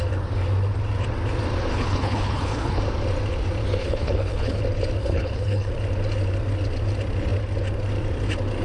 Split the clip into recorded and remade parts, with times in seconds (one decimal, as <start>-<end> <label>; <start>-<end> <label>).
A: 0.0-1.7 recorded; 1.7-2.8 remade; 2.8-3.8 recorded; 3.8-4.6 remade; 4.6-5.0 recorded; 5.0-5.7 remade; 5.7-8.6 recorded